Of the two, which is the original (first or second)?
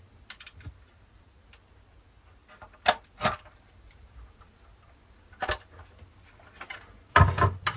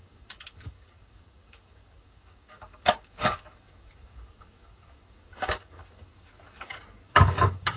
first